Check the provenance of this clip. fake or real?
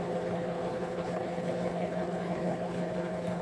fake